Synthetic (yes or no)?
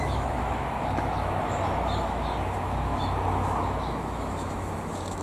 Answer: yes